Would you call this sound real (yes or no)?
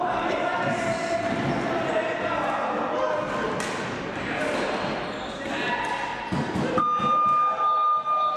yes